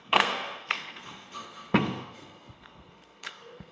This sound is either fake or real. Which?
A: fake